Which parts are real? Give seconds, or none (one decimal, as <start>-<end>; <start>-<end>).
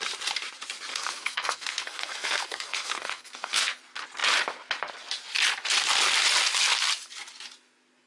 0.0-0.9; 3.8-8.1